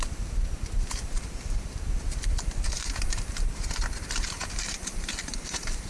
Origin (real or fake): fake